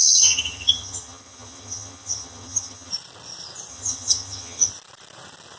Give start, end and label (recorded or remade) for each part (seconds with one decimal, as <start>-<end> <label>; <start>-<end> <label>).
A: 0.0-2.9 remade; 2.9-3.7 recorded; 3.7-4.7 remade; 4.7-5.6 recorded